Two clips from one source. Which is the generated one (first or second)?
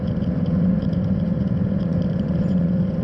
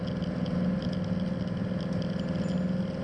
first